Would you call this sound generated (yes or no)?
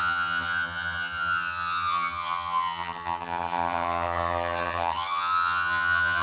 yes